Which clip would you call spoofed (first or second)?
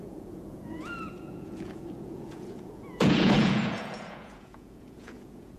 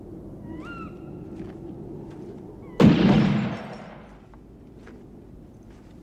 first